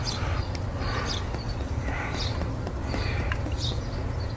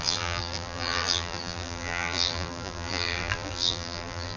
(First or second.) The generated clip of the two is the second